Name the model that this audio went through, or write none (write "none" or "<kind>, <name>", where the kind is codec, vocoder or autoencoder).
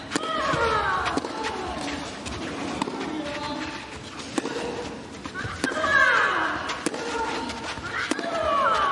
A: none